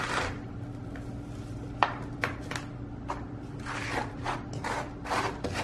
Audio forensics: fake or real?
real